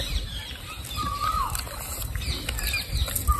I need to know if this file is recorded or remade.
recorded